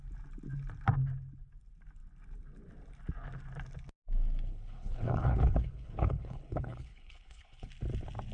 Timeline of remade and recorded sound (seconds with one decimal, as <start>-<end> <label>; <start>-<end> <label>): 0.0-4.5 recorded; 4.5-7.7 remade; 7.7-8.3 recorded